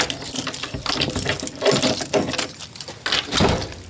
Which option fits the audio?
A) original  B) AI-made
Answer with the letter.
A